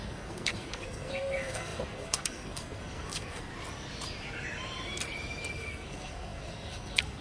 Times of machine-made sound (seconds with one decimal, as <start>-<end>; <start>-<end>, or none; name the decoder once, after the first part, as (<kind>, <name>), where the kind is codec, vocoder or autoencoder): 0.0-3.5 (codec, SNAC); 5.5-7.2